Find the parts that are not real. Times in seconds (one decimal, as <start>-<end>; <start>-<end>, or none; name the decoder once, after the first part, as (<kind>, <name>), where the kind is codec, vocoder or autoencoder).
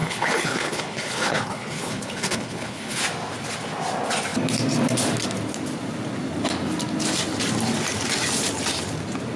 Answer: 0.0-3.0 (codec, HILCodec)